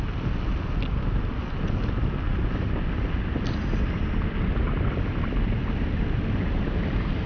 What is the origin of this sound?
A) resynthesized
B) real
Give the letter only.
B